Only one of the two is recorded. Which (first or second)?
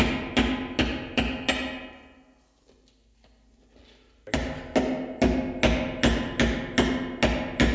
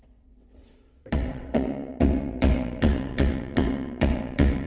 first